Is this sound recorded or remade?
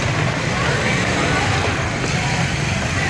recorded